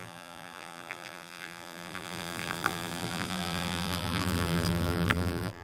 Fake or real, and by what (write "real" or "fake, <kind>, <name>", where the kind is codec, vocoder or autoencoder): fake, vocoder, BigVGAN v2